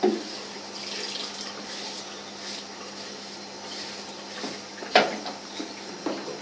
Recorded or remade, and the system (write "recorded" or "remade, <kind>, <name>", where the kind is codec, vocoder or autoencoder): recorded